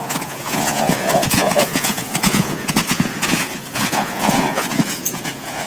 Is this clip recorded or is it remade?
remade